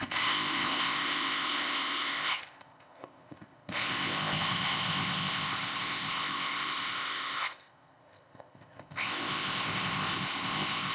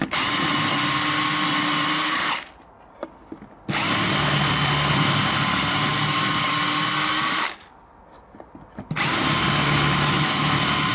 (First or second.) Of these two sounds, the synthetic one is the first